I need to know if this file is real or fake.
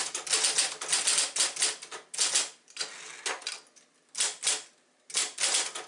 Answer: real